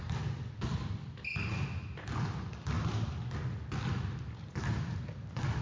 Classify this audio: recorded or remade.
recorded